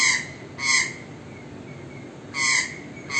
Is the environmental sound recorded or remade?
recorded